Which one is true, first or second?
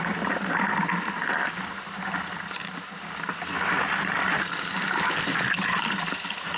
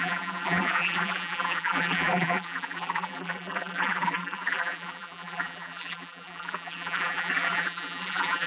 first